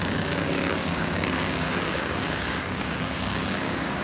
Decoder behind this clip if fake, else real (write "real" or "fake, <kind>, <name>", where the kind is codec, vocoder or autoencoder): fake, codec, DAC